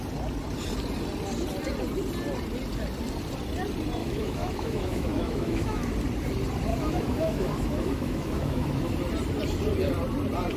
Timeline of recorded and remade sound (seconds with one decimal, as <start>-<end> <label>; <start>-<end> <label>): 0.0-4.0 recorded; 4.0-5.9 remade; 5.9-6.7 recorded; 6.7-8.9 remade; 8.9-10.6 recorded